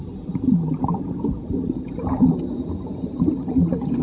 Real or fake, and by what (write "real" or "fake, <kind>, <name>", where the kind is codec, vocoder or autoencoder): real